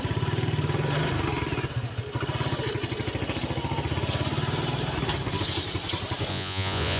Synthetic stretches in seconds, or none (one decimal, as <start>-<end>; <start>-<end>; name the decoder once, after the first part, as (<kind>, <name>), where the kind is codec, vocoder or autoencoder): 6.3-7.0 (vocoder, Vocos)